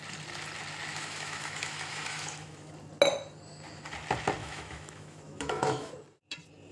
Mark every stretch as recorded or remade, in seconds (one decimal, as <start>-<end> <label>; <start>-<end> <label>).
0.0-0.9 recorded; 0.9-2.7 remade; 2.7-4.4 recorded; 4.4-5.9 remade; 5.9-6.7 recorded